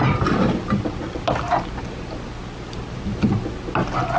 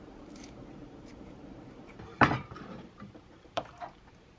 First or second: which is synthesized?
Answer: second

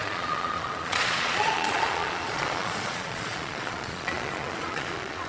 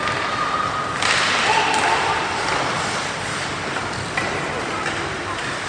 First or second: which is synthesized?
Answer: first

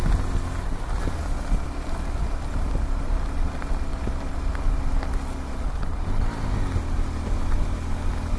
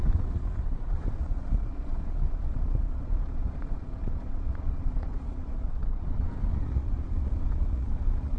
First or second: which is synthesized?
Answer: second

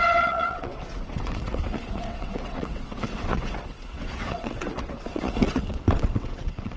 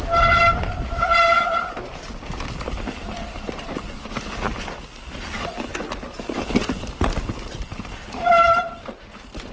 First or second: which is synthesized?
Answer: first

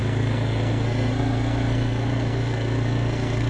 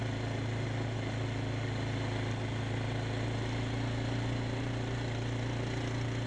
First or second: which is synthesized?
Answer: first